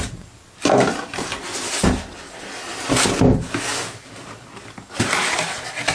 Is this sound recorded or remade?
recorded